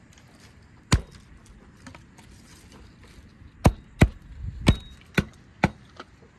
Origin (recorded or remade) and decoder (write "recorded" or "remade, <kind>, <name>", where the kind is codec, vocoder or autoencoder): recorded